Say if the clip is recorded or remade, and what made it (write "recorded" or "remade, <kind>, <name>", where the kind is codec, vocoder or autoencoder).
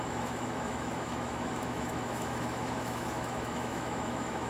remade, autoencoder, DAC-VAE